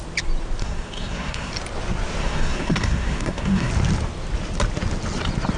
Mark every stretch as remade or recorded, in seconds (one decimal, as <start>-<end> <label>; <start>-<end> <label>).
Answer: 0.0-0.6 recorded; 0.6-1.5 remade; 1.5-2.2 recorded; 2.2-3.7 remade; 3.7-5.6 recorded